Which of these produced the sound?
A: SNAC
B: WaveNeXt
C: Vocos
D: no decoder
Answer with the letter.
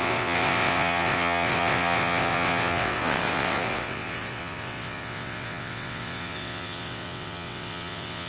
B